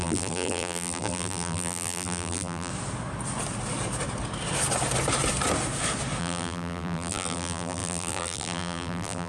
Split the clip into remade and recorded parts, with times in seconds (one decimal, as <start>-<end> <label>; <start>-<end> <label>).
0.0-2.7 remade; 2.7-6.2 recorded; 6.2-9.3 remade